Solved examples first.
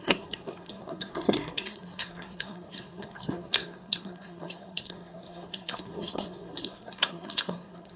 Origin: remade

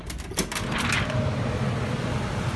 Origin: recorded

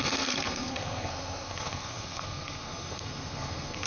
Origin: remade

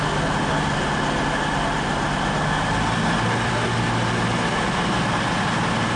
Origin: recorded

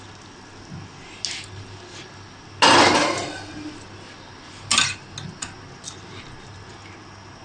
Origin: recorded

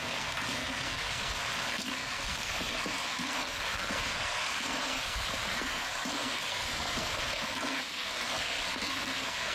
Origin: remade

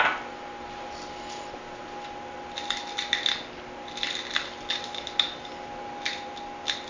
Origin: recorded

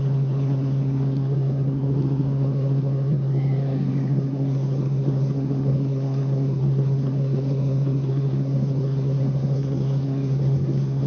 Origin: remade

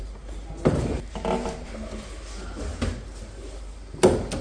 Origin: recorded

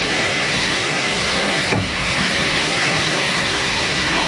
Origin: remade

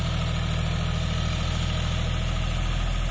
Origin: recorded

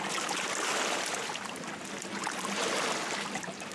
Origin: recorded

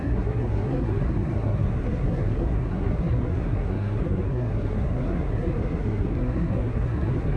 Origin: remade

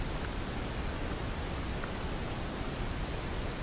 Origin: recorded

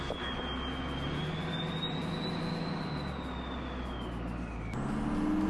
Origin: recorded